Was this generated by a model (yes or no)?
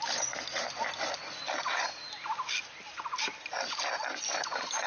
no